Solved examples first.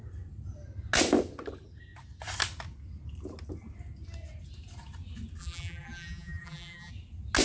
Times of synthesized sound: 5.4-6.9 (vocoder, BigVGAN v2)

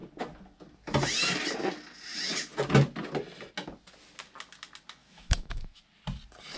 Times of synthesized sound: 5.0-5.8 (autoencoder, DAC-VAE)

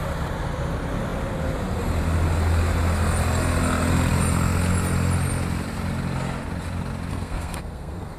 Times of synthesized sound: 7.1-8.2 (codec, SNAC)